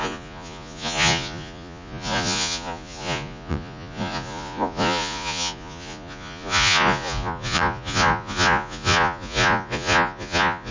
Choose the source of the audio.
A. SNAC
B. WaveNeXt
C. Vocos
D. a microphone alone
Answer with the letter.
C